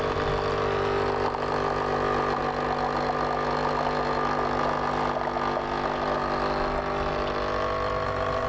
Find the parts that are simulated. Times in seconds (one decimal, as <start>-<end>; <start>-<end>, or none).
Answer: none